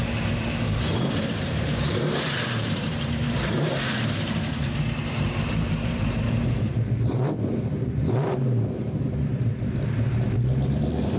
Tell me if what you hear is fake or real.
fake